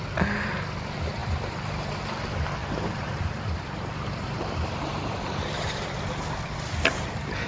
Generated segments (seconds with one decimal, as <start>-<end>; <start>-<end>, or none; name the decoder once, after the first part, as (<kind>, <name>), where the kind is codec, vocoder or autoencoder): 1.2-2.0 (vocoder, BigVGAN v2); 2.6-6.0